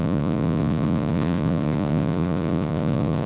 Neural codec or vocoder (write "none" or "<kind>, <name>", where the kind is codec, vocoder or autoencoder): vocoder, Vocos